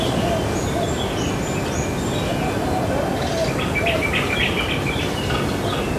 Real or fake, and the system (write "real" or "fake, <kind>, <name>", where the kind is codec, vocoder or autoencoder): real